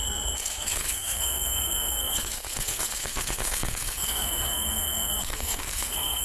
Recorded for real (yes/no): no